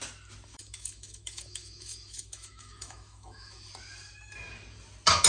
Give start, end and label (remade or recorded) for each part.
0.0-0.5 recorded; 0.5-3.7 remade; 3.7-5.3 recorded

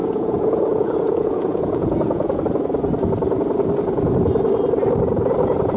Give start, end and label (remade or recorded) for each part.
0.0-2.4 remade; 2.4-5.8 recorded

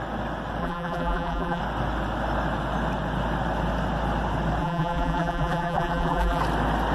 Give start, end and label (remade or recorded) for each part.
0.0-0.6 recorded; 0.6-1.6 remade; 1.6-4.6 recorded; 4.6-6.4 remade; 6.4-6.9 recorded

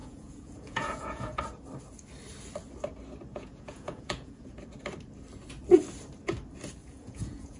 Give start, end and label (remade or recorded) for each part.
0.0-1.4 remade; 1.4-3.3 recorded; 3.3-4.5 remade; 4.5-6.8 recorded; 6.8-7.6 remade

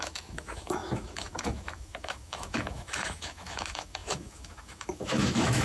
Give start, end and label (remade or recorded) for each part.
0.0-5.6 remade

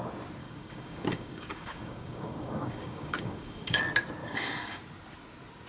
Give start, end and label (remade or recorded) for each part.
0.0-0.4 recorded; 0.4-3.8 remade; 3.8-4.2 recorded; 4.2-4.8 remade; 4.8-5.7 recorded

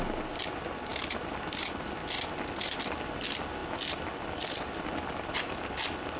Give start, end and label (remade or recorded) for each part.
0.0-6.2 recorded

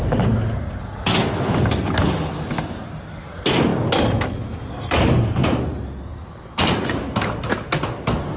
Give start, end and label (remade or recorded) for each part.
0.0-8.4 recorded